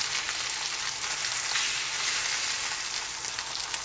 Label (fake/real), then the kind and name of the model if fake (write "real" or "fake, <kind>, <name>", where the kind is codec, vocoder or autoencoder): real